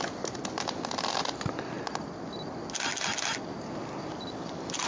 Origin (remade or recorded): recorded